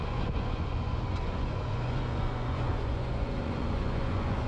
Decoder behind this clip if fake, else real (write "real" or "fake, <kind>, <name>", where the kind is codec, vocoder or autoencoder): fake, vocoder, Vocos